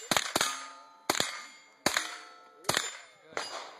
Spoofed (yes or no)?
no